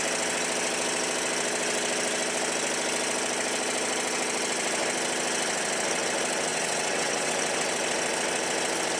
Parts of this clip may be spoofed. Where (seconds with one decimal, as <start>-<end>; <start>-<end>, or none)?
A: 6.5-7.3